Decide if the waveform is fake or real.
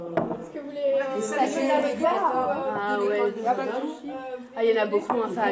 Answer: real